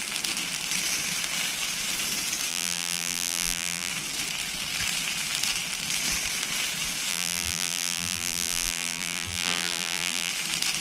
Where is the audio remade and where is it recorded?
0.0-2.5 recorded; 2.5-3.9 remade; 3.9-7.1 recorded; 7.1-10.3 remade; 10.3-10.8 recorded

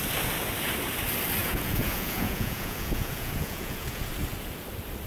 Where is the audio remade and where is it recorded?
0.0-1.4 recorded; 1.4-4.1 remade; 4.1-5.1 recorded

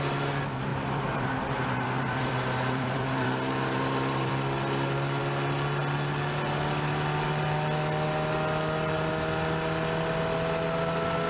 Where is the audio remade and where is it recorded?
0.0-0.7 recorded; 0.7-4.3 remade; 4.3-11.3 recorded

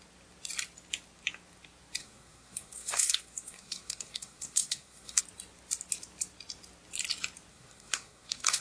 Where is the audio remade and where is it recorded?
0.0-2.0 recorded; 2.0-5.2 remade; 5.2-7.5 recorded; 7.5-8.6 remade